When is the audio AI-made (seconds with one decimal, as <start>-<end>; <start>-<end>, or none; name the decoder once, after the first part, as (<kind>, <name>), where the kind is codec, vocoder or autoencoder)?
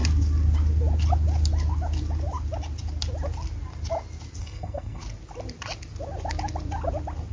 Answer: 4.4-5.0 (codec, SNAC)